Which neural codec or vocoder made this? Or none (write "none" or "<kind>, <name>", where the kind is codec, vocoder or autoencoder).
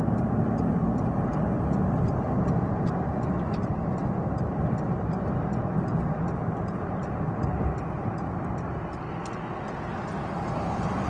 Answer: none